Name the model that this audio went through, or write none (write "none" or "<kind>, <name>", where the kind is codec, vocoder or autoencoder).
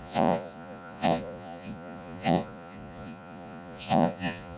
vocoder, Vocos